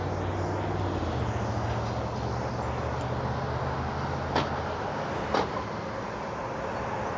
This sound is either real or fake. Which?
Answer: real